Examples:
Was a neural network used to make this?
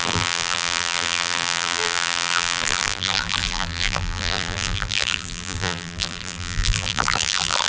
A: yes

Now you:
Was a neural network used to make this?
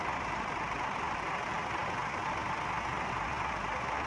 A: no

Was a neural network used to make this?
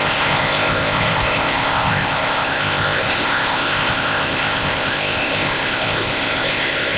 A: yes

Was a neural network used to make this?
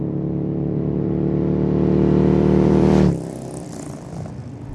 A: yes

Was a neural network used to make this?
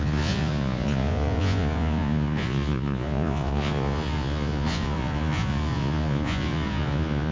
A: yes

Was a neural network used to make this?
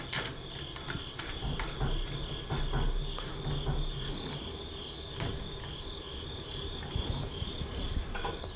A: no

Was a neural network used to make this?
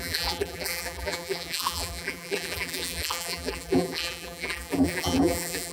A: yes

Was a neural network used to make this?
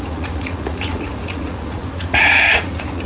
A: yes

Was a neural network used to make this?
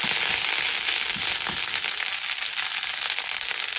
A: no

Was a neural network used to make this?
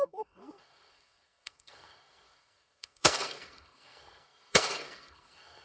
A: yes